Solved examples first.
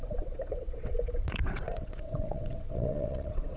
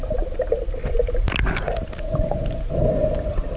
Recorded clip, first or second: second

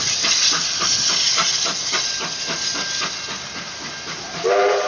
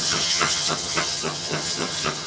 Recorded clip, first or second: first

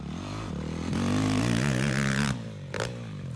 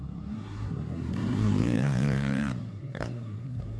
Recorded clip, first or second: first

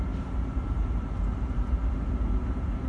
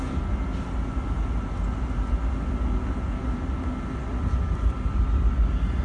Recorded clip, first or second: second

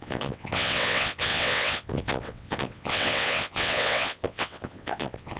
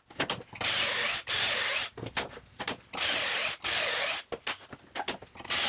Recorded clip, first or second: second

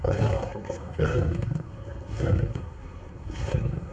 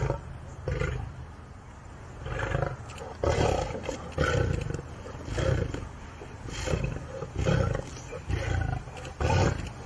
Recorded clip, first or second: second